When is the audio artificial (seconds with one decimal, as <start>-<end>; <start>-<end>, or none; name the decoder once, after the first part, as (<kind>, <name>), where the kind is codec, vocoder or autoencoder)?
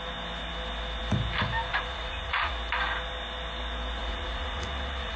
1.7-2.5 (vocoder, Vocos); 4.0-5.2